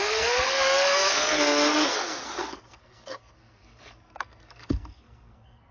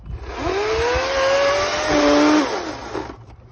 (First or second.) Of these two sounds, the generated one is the first